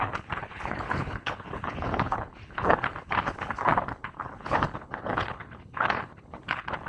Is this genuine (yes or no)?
no